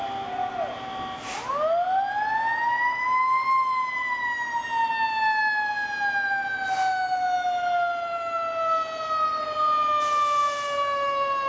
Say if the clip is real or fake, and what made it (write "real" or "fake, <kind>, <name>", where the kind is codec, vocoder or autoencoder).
real